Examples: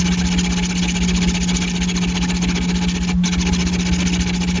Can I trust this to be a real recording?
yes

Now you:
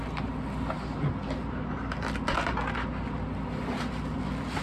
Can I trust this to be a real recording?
yes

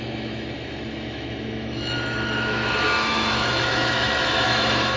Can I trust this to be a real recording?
no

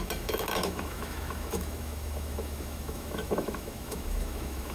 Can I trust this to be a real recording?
no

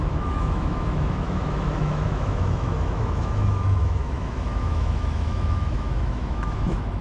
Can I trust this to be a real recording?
no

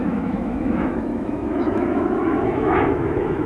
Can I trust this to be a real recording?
no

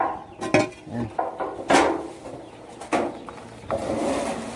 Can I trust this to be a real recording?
yes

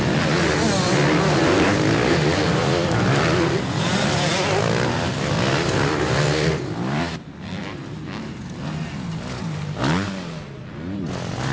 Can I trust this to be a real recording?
yes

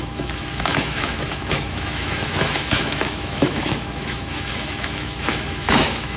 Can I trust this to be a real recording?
no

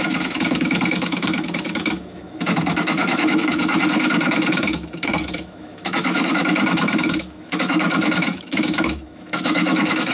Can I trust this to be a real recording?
no